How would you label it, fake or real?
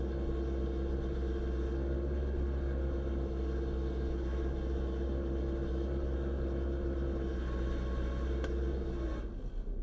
real